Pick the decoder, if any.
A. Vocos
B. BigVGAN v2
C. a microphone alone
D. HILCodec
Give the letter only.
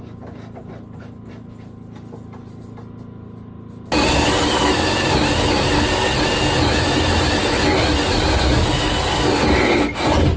C